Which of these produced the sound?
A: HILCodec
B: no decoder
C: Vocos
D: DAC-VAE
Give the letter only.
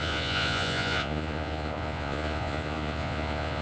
C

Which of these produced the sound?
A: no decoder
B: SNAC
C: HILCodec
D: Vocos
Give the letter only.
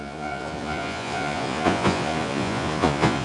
D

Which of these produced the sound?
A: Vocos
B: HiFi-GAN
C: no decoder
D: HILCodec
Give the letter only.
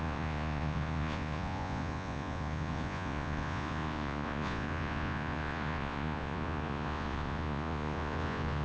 A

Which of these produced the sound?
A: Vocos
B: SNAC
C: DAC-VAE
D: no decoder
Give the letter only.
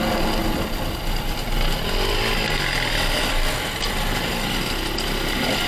D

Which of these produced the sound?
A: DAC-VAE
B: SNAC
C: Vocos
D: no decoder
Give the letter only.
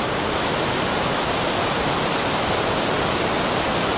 D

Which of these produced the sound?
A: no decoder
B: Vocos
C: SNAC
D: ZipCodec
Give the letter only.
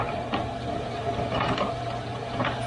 A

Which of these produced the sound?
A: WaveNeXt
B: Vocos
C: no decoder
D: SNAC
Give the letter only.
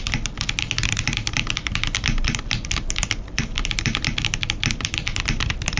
C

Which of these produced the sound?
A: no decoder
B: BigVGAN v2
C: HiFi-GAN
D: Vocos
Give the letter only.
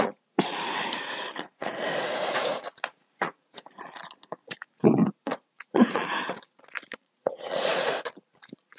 D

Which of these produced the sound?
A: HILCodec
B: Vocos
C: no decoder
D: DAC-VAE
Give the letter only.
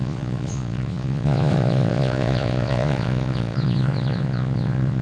B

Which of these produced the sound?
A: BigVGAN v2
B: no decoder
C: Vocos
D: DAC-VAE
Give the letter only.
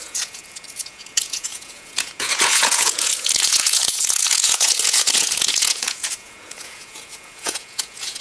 C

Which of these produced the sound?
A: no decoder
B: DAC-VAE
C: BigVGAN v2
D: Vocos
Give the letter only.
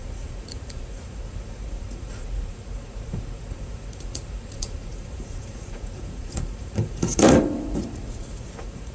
D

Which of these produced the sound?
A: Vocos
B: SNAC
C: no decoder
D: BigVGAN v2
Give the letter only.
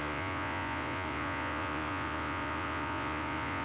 A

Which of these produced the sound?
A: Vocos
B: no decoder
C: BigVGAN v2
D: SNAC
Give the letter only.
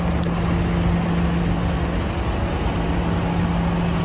B